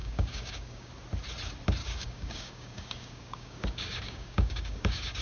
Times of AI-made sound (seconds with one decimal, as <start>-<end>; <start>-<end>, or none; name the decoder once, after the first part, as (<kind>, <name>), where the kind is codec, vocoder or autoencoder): 0.0-0.9 (codec, DAC); 1.8-5.2

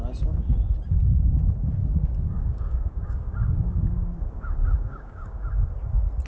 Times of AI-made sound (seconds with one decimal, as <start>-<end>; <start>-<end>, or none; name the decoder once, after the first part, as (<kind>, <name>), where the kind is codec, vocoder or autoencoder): 1.9-5.7 (codec, DAC)

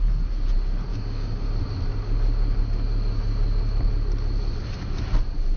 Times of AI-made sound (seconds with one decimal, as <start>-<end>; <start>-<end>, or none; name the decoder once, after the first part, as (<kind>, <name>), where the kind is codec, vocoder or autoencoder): 0.9-1.4 (codec, DAC)

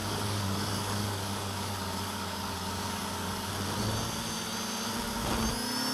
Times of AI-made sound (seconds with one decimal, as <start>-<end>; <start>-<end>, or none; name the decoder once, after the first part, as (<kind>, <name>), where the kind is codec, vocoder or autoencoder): 0.0-3.5 (codec, DAC)